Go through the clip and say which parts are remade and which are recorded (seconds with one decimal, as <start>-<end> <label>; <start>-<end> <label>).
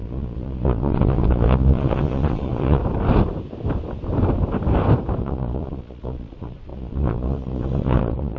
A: 0.0-2.8 remade; 2.8-5.2 recorded; 5.2-8.4 remade